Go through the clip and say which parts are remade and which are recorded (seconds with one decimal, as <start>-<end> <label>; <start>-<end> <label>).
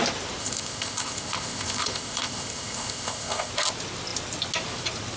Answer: 0.0-0.4 recorded; 0.4-3.5 remade; 3.5-5.2 recorded